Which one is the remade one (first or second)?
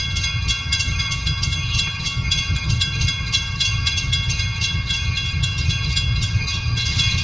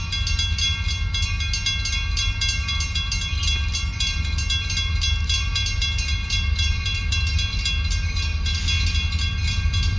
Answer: first